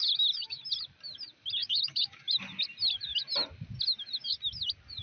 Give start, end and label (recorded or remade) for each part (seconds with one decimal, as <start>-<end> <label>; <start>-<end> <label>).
0.0-0.6 remade; 0.6-1.6 recorded; 1.6-2.2 remade; 2.2-5.0 recorded